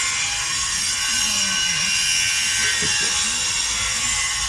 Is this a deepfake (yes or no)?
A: no